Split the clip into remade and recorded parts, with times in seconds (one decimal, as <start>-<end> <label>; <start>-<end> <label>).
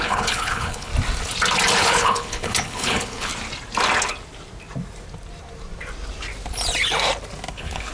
0.0-0.9 remade; 0.9-1.8 recorded; 1.8-3.3 remade; 3.3-7.5 recorded; 7.5-7.9 remade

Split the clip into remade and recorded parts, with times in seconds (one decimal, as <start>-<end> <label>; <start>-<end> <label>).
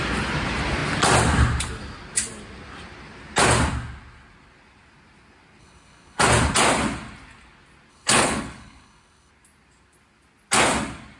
0.0-5.6 recorded; 5.6-6.2 remade; 6.2-7.9 recorded; 7.9-9.3 remade; 9.3-11.2 recorded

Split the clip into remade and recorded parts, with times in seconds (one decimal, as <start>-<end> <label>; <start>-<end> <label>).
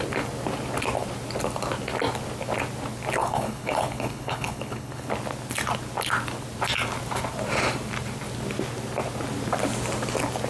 0.0-3.2 recorded; 3.2-5.1 remade; 5.1-10.5 recorded